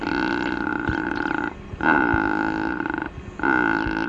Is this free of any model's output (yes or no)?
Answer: yes